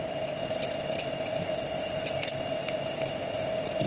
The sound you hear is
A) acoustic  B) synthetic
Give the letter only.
B